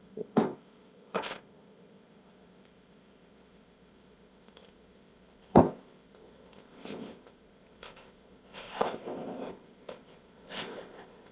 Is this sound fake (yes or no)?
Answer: yes